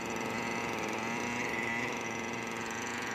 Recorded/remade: recorded